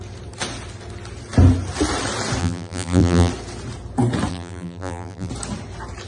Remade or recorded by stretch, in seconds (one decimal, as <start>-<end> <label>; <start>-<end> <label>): 0.0-2.4 recorded; 2.4-3.3 remade; 3.3-4.3 recorded; 4.3-5.3 remade; 5.3-6.1 recorded